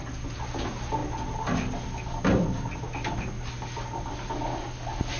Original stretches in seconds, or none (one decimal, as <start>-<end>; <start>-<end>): 0.0-5.2